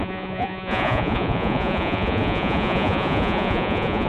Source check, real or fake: fake